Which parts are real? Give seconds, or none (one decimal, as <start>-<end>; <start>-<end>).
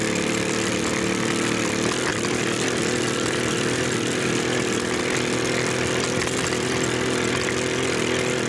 0.0-2.1; 5.0-8.5